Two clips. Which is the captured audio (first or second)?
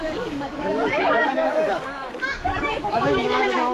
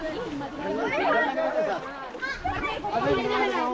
second